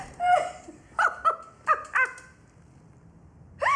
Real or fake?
real